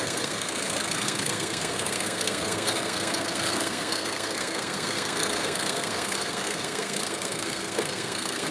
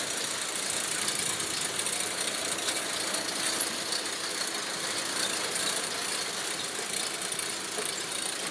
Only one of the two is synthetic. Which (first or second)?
first